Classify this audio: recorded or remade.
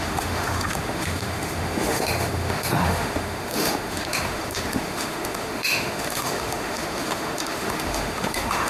remade